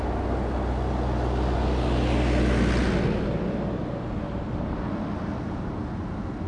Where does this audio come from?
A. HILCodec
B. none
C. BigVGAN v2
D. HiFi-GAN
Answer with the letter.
B